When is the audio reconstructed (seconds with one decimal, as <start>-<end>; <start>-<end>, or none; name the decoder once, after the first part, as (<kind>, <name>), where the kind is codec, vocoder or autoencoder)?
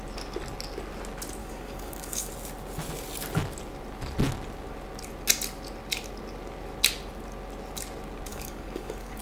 1.4-2.3 (codec, DAC); 8.3-9.2